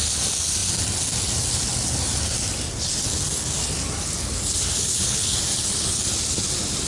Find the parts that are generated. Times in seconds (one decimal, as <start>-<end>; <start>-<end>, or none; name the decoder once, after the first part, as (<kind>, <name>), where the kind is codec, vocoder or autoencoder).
4.9-5.4 (codec, HILCodec)